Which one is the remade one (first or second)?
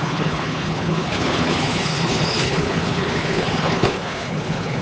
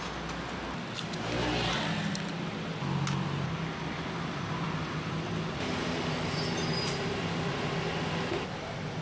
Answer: first